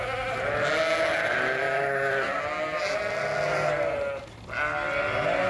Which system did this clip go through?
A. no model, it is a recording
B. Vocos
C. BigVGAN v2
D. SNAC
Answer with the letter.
A